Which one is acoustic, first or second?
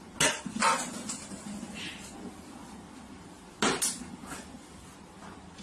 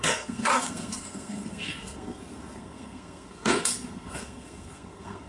first